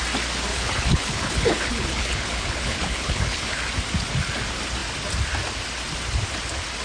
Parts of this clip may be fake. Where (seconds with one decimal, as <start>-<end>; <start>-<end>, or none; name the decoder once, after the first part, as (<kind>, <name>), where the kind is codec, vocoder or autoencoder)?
0.5-3.6 (codec, HILCodec)